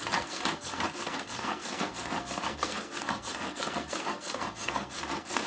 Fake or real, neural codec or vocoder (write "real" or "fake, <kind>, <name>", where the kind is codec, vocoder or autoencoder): fake, codec, SNAC